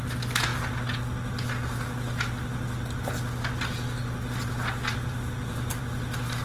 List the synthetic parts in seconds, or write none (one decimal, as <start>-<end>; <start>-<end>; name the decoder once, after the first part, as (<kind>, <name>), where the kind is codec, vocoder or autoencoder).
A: 4.9-5.8 (vocoder, BigVGAN v2)